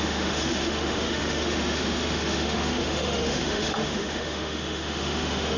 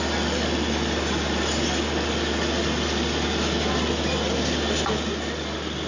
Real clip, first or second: second